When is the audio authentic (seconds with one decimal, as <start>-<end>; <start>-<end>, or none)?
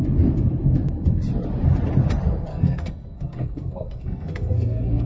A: 0.0-2.5